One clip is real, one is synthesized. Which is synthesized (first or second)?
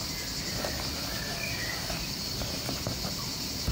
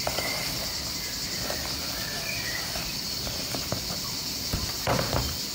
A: second